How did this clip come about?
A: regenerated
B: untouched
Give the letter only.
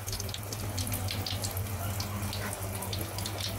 B